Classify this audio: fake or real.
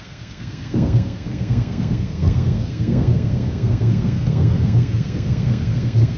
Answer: fake